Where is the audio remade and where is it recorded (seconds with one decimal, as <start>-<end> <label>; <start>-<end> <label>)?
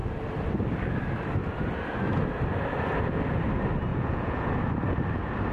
0.0-3.9 recorded; 3.9-4.5 remade; 4.5-5.5 recorded